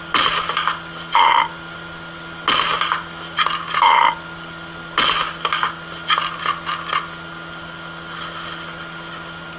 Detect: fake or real real